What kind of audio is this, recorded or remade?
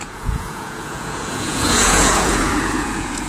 remade